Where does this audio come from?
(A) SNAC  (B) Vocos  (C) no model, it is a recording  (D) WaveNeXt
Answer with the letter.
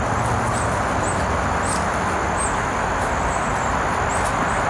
C